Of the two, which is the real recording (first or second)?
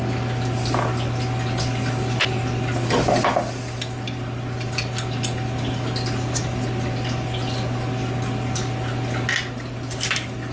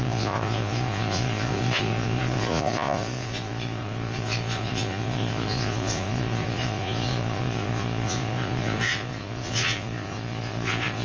first